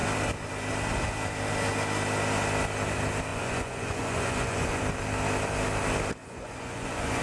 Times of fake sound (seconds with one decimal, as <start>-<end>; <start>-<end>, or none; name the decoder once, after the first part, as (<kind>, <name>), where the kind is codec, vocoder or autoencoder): 3.3-4.8 (vocoder, Vocos); 6.2-7.2